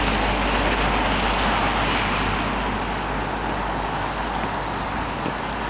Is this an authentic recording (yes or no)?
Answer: yes